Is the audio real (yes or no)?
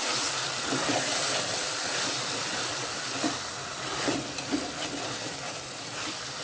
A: yes